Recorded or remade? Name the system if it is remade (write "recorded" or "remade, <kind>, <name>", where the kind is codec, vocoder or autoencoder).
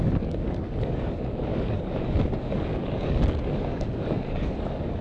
remade, codec, DAC